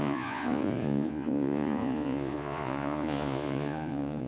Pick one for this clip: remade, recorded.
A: remade